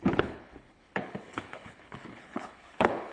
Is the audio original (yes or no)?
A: no